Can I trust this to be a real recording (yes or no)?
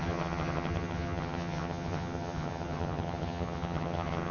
no